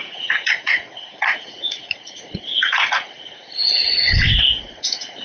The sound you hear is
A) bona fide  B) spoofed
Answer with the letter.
B